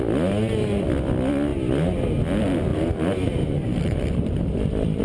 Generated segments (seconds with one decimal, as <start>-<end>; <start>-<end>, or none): 2.7-5.0